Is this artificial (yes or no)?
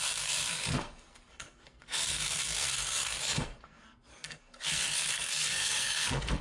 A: yes